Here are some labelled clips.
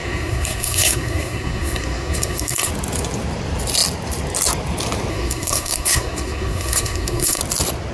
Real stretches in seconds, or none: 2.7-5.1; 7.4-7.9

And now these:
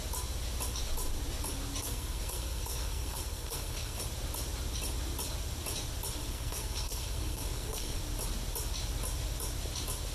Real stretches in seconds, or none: 0.0-1.8; 4.0-6.2; 8.0-10.1

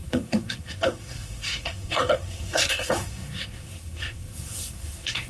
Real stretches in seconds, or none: none

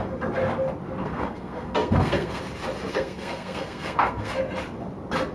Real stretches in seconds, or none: 0.0-1.0; 2.4-2.9; 4.4-5.3